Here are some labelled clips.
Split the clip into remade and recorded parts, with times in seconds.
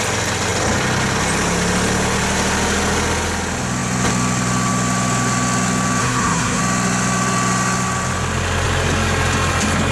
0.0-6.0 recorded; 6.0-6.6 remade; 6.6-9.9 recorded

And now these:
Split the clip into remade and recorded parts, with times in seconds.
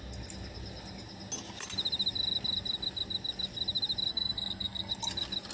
0.0-4.1 recorded; 4.1-4.9 remade; 4.9-5.5 recorded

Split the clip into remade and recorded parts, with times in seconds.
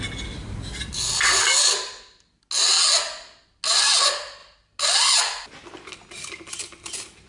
0.0-0.4 recorded; 0.4-2.4 remade; 2.4-7.3 recorded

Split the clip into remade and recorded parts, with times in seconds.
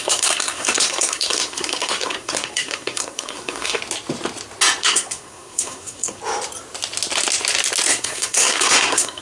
0.0-3.8 remade; 3.8-4.8 recorded; 4.8-6.2 remade; 6.2-7.9 recorded; 7.9-9.2 remade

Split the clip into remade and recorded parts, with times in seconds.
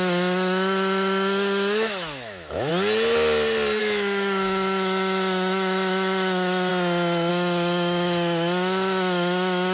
0.0-2.7 remade; 2.7-3.8 recorded; 3.8-6.7 remade; 6.7-7.3 recorded; 7.3-9.7 remade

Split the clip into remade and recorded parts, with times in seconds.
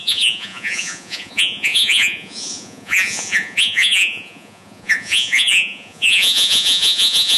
0.0-7.4 remade